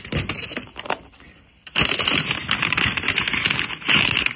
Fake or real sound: real